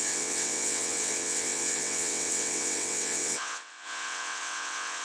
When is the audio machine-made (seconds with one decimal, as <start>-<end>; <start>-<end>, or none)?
0.0-5.0